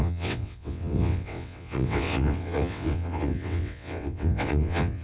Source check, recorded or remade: remade